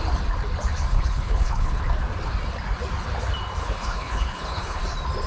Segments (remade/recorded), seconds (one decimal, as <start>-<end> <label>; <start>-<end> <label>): 0.0-0.9 recorded; 0.9-1.8 remade; 1.8-3.6 recorded; 3.6-4.8 remade; 4.8-5.3 recorded